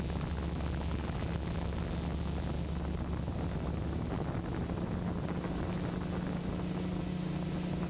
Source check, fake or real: real